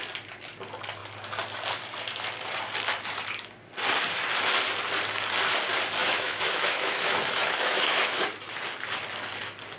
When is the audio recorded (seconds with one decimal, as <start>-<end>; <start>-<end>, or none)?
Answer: 0.0-6.0; 8.2-9.8